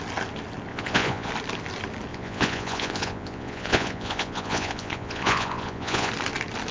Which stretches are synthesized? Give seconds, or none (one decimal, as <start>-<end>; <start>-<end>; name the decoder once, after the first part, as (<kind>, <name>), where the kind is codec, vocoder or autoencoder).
0.7-1.3 (vocoder, Vocos); 2.1-6.1